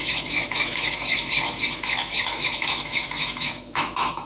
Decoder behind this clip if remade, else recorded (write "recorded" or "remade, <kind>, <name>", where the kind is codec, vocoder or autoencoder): remade, autoencoder, DAC-VAE